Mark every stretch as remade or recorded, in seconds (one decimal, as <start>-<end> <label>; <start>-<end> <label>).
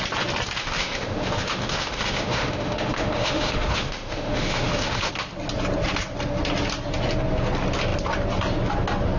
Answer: 0.0-0.6 recorded; 0.6-5.1 remade; 5.1-9.2 recorded